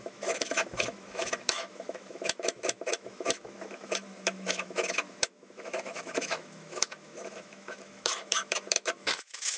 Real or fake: fake